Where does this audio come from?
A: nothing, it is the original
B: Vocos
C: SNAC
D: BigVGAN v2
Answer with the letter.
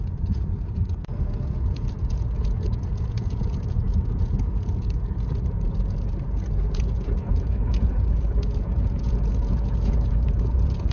B